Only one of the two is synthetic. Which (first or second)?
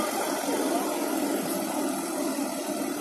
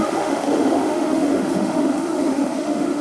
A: second